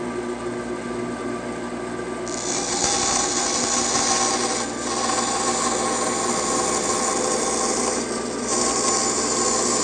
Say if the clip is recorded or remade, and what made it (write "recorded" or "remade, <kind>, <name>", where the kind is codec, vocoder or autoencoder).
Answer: recorded